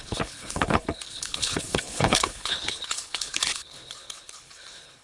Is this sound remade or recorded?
remade